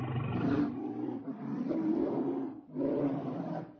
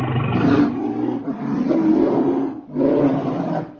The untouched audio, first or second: second